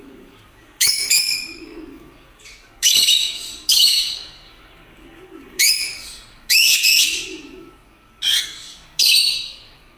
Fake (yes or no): yes